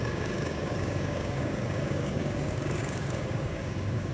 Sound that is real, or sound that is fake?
fake